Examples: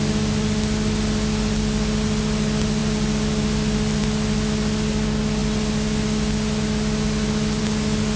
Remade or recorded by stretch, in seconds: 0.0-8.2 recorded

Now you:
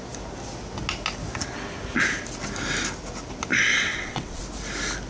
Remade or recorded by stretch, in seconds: 0.0-3.7 recorded; 3.7-4.4 remade; 4.4-5.1 recorded

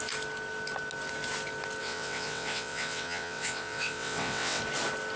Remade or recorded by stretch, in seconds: 0.0-1.8 recorded; 1.8-4.6 remade; 4.6-5.2 recorded

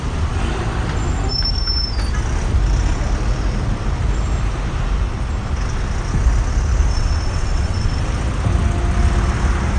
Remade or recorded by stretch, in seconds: 0.0-6.9 recorded; 6.9-8.0 remade; 8.0-9.8 recorded

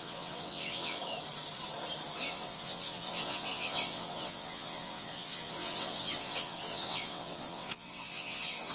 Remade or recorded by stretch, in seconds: 0.0-1.0 remade; 1.0-2.2 recorded; 2.2-8.7 remade

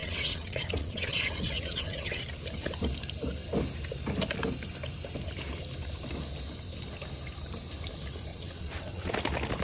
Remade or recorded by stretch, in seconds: 0.0-2.2 remade; 2.2-8.3 recorded; 8.3-9.1 remade; 9.1-9.6 recorded

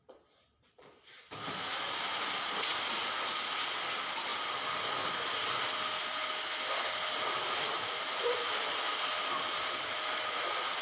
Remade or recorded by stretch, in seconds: 0.0-10.8 recorded